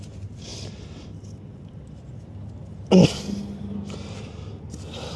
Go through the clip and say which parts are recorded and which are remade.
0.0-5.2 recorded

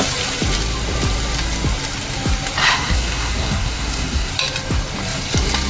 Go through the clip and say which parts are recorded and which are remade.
0.0-2.6 recorded; 2.6-4.3 remade; 4.3-5.7 recorded

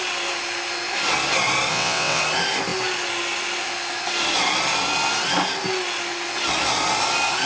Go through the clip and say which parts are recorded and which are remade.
0.0-1.7 recorded; 1.7-2.2 remade; 2.2-7.5 recorded

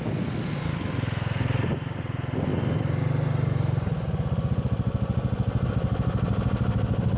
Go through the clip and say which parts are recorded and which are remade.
0.0-7.2 recorded

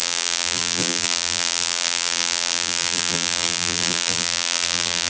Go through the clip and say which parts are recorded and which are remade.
0.0-5.1 remade

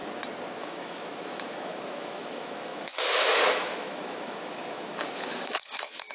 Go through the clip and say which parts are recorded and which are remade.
0.0-0.6 recorded; 0.6-6.1 remade

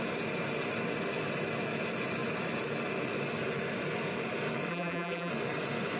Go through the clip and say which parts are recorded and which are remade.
0.0-4.7 recorded; 4.7-5.3 remade; 5.3-6.0 recorded

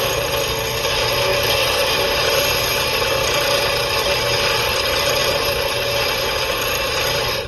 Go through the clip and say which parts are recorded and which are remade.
0.0-7.5 recorded